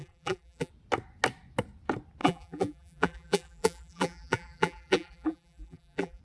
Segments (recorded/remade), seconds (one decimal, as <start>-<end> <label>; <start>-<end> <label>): 0.0-0.7 remade; 0.7-2.2 recorded; 2.2-6.2 remade